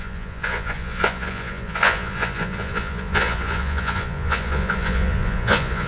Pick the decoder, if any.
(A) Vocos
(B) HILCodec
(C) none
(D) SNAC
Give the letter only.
A